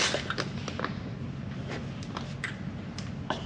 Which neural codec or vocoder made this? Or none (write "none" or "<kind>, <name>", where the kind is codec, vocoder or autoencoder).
none